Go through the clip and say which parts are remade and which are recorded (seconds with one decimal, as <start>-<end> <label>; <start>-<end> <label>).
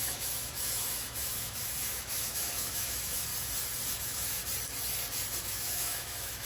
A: 0.0-3.3 remade; 3.3-3.9 recorded; 3.9-4.4 remade; 4.4-5.4 recorded; 5.4-6.5 remade